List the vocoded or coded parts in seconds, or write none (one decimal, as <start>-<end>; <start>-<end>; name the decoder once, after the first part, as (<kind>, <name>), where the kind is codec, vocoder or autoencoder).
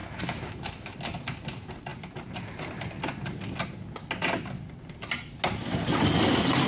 0.0-0.9 (autoencoder, DAC-VAE)